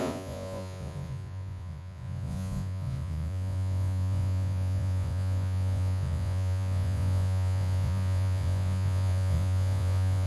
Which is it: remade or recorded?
remade